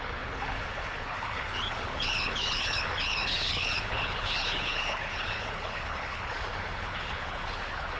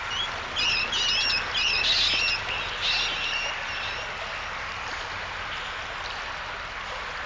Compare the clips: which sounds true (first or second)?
second